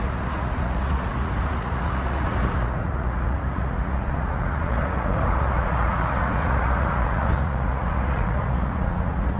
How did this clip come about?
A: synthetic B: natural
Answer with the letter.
A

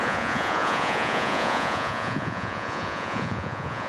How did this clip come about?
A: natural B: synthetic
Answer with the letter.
B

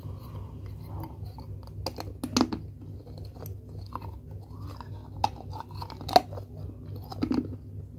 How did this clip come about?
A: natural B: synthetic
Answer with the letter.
A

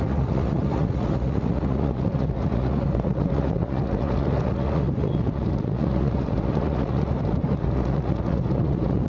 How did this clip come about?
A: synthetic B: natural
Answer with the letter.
A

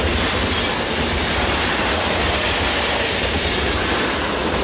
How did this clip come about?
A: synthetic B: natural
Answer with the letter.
B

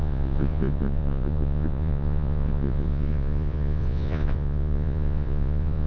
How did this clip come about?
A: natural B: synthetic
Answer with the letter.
B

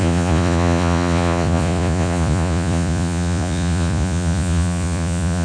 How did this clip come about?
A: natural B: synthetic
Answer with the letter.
B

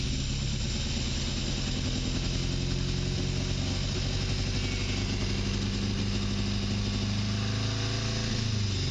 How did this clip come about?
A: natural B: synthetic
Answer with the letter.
A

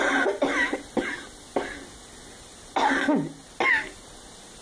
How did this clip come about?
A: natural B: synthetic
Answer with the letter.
A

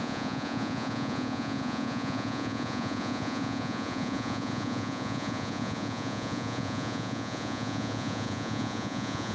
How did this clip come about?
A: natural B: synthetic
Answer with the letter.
B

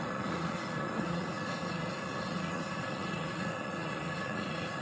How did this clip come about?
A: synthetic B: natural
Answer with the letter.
A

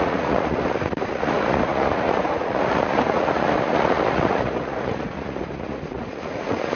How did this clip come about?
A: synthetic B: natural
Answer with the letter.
A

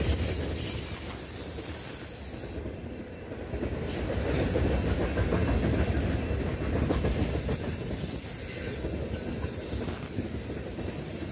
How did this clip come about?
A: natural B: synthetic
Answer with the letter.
A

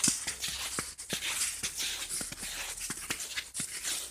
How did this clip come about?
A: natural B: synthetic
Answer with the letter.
A